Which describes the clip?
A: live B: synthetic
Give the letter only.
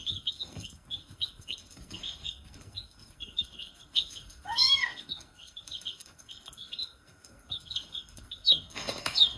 B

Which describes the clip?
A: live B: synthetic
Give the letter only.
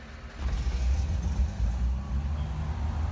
A